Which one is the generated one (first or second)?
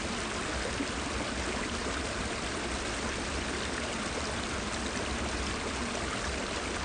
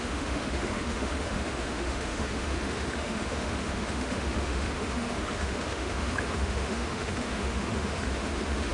second